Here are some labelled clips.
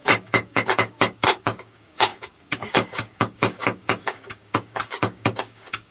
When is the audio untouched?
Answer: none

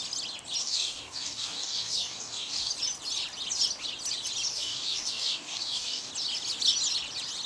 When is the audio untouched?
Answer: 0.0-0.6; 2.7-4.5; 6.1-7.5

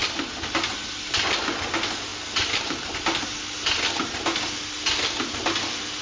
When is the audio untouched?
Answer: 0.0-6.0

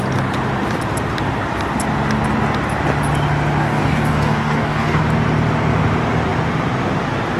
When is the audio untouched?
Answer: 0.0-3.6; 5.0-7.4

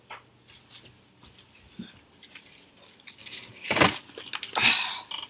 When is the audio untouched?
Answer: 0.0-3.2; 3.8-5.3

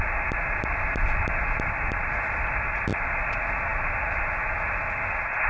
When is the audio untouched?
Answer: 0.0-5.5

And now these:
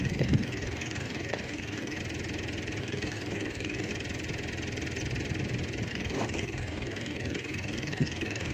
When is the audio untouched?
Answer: 2.0-2.8; 3.9-5.9

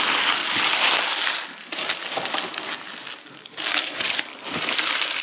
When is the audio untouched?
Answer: 0.4-3.5; 4.3-5.2